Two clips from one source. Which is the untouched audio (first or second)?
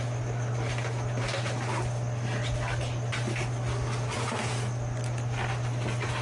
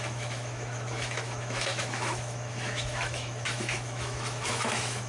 first